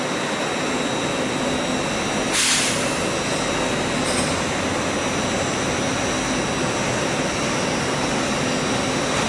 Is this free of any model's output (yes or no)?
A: yes